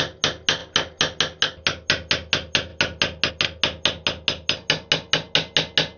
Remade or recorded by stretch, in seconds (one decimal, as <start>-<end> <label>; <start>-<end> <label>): 0.0-6.0 recorded